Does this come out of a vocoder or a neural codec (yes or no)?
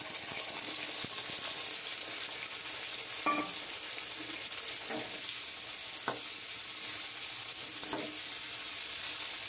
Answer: no